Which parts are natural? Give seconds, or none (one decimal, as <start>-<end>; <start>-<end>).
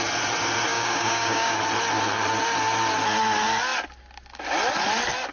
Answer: 0.0-0.7; 1.6-5.3